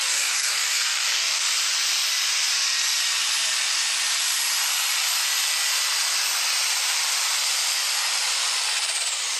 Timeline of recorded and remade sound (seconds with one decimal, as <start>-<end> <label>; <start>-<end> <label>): 0.0-1.4 remade; 1.4-9.4 recorded